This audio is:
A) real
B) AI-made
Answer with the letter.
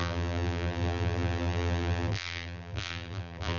B